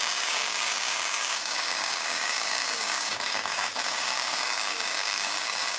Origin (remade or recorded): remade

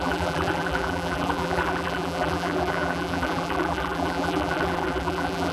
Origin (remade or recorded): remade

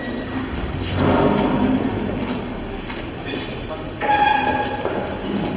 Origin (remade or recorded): recorded